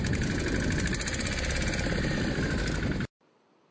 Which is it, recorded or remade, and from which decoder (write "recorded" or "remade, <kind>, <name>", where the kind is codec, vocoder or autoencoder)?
recorded